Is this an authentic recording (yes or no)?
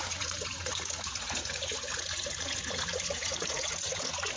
no